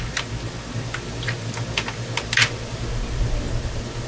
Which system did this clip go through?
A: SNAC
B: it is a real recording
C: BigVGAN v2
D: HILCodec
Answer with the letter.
B